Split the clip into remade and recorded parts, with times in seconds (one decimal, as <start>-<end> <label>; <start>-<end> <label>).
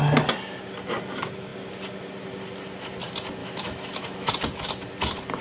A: 0.0-3.4 recorded; 3.4-4.3 remade; 4.3-5.4 recorded